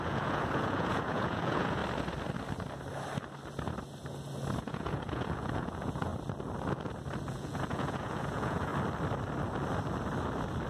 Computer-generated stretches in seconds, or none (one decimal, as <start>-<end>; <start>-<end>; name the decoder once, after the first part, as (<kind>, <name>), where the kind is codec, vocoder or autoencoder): 0.0-1.8 (vocoder, Vocos); 4.6-6.1; 7.3-8.7